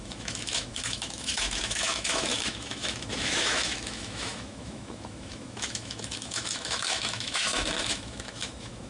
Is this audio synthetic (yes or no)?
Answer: yes